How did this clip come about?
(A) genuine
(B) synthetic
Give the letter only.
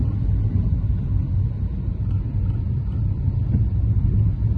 A